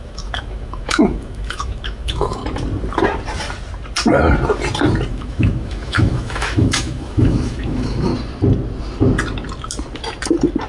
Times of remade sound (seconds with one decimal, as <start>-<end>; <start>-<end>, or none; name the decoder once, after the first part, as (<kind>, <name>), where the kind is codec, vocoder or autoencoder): 0.0-2.4 (autoencoder, DAC-VAE); 5.1-8.1